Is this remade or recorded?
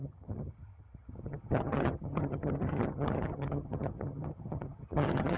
remade